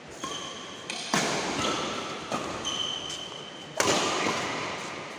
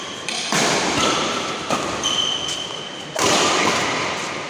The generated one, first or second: second